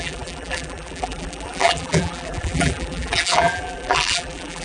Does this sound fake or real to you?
fake